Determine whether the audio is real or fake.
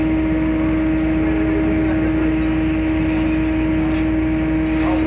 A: real